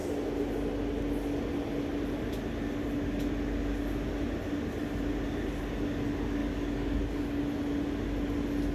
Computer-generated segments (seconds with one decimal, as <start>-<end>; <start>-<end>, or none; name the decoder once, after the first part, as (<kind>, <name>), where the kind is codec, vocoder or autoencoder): 6.4-7.4 (codec, DAC)